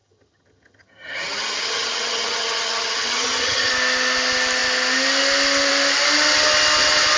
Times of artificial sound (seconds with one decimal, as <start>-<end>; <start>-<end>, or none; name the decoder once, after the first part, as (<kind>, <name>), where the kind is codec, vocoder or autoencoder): 0.0-3.7 (vocoder, HiFi-GAN)